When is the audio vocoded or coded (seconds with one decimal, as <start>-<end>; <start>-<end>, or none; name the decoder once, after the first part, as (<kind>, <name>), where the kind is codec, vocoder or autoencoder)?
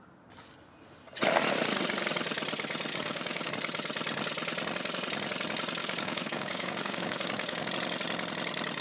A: 2.9-3.5 (codec, DAC); 5.8-7.7